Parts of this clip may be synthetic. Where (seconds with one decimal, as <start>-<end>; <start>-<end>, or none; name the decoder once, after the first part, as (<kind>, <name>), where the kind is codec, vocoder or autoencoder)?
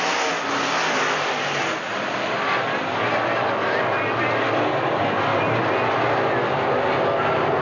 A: none